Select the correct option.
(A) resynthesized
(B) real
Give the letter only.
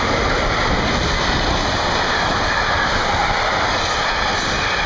B